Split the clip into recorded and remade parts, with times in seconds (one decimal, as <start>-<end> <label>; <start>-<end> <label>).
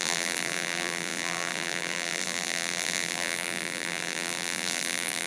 0.0-5.3 remade